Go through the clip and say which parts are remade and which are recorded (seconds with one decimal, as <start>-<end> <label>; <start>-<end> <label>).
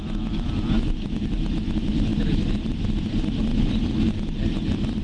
0.0-5.0 recorded